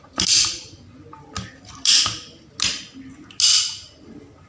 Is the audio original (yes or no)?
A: yes